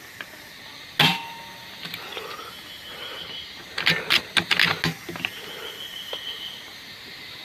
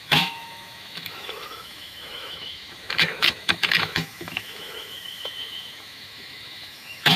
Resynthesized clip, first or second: second